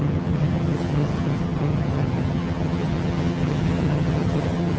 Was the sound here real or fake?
fake